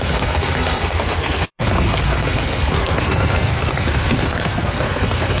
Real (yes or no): no